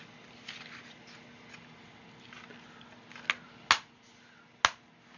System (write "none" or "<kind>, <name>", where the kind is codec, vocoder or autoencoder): none